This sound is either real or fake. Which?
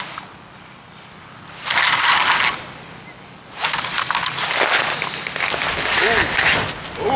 real